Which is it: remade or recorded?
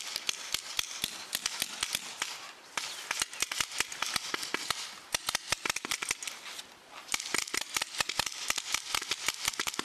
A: recorded